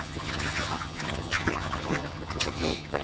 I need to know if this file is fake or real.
fake